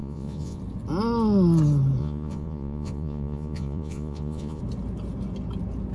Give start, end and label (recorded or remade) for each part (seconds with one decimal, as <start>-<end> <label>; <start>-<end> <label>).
0.0-0.6 remade; 0.6-2.0 recorded; 2.0-4.6 remade; 4.6-5.9 recorded